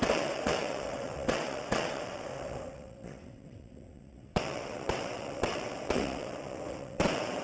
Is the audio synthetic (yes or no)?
yes